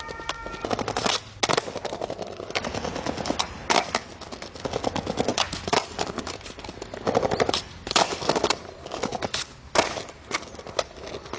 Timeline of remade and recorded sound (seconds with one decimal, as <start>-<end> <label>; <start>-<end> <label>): 0.0-5.3 recorded; 5.3-9.1 remade; 9.1-11.4 recorded